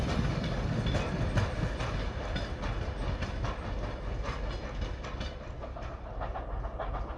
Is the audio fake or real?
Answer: real